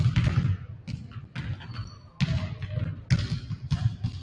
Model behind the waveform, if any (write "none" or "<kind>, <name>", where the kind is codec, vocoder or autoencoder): none